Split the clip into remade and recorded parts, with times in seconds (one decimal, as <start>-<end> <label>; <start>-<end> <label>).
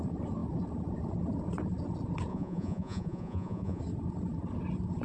0.0-2.3 recorded; 2.3-3.8 remade; 3.8-5.0 recorded